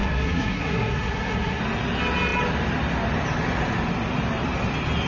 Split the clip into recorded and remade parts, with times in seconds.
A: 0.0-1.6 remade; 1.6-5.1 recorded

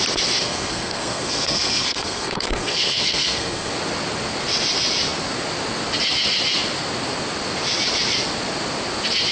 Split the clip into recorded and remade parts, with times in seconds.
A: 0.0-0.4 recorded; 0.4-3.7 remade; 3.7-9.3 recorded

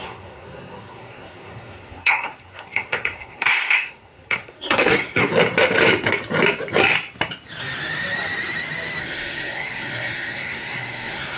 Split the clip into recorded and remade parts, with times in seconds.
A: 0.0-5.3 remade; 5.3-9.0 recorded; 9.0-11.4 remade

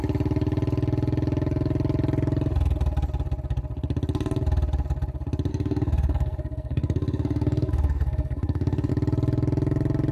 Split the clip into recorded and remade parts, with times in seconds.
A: 0.0-5.5 recorded; 5.5-8.9 remade; 8.9-10.1 recorded